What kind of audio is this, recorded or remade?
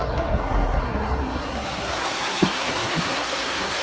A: remade